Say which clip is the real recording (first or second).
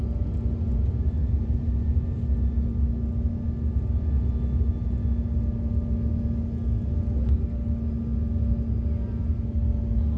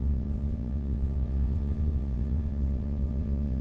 first